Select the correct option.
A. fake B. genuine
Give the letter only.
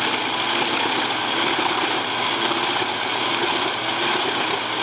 B